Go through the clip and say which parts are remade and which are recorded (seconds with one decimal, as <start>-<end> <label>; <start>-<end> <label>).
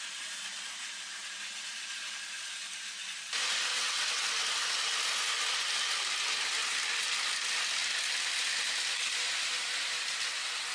0.0-3.7 recorded; 3.7-4.3 remade; 4.3-10.7 recorded